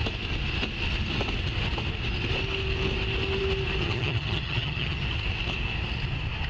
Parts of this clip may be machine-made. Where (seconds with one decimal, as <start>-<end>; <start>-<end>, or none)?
3.8-5.0